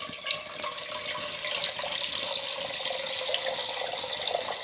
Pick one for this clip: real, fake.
real